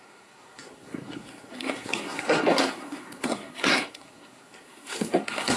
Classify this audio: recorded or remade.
remade